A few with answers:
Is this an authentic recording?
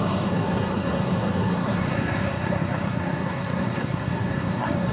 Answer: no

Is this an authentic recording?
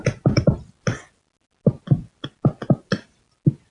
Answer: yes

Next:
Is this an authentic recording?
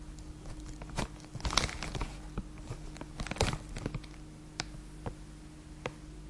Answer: yes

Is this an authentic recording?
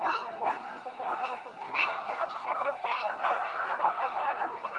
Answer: no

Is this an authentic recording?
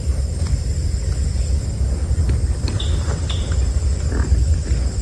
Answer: yes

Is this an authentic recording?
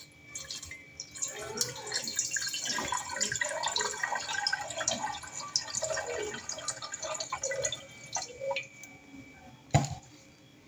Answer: yes